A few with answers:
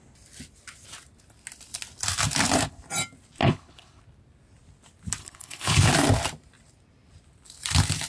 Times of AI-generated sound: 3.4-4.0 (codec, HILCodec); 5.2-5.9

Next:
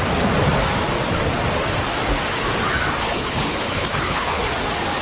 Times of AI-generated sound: 3.0-4.5 (codec, HILCodec)

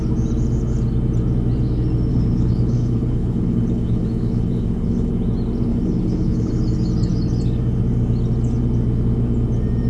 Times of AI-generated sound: 2.1-5.1 (codec, HILCodec); 5.7-6.5

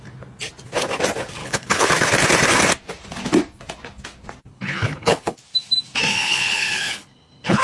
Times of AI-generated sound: 1.4-1.9 (codec, HILCodec); 4.5-5.4; 6.1-7.6

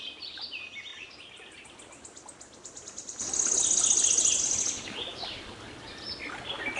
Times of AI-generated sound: none

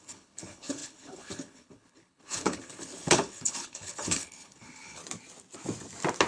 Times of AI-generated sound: 0.0-5.0 (codec, HILCodec)

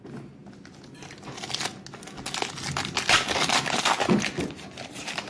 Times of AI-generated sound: none